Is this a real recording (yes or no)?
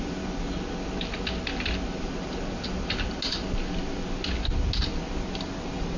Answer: yes